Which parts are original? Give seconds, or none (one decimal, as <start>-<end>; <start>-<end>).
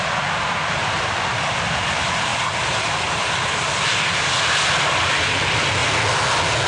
0.0-6.7